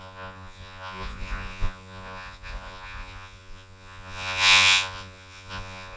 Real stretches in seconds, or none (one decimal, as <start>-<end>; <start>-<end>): none